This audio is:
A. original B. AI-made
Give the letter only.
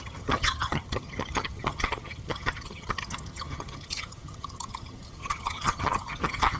B